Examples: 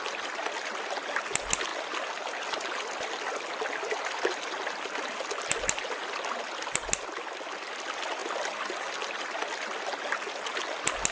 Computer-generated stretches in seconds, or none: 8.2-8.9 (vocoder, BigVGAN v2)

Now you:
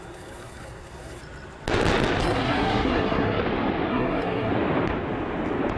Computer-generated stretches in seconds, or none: 0.0-1.2 (codec, SNAC); 2.2-3.4; 3.9-4.5

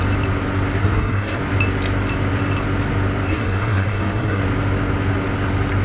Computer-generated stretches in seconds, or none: 0.8-1.4 (codec, SNAC); 3.3-4.4

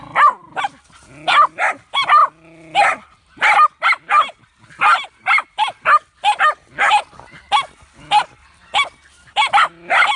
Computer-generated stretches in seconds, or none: none

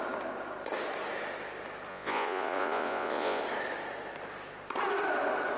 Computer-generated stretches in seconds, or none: 1.9-3.4 (vocoder, Vocos)

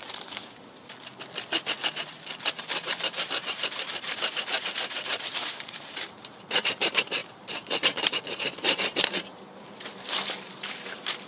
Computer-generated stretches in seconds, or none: 0.0-0.4 (vocoder, BigVGAN v2); 2.5-11.3